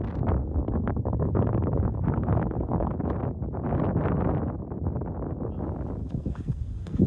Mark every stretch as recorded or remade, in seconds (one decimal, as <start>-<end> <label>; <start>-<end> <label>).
0.0-0.4 recorded; 0.4-2.9 remade; 2.9-6.0 recorded; 6.0-7.1 remade